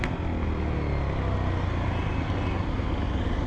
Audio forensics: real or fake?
real